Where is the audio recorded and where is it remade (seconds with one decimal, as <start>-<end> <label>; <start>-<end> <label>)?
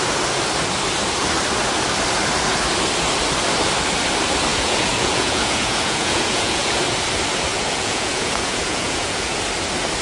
0.0-4.5 recorded; 4.5-6.8 remade; 6.8-7.5 recorded; 7.5-9.4 remade; 9.4-10.0 recorded